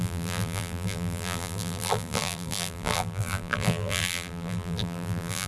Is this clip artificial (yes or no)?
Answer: yes